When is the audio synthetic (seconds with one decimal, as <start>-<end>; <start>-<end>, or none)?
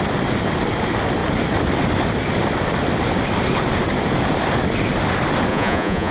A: 5.5-6.1